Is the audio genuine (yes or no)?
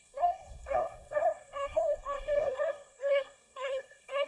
no